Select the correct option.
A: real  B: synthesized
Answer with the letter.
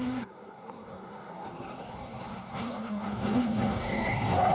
B